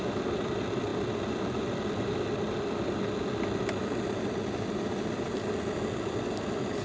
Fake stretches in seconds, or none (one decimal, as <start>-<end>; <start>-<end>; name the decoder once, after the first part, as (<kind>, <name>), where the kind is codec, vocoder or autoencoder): none